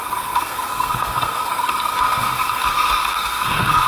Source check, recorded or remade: remade